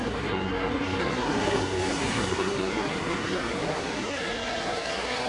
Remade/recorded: remade